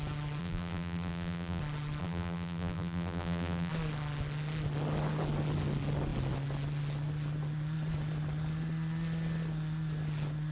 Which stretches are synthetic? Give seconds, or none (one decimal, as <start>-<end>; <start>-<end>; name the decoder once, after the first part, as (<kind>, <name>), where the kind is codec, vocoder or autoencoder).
0.4-1.6 (vocoder, BigVGAN v2); 2.0-3.7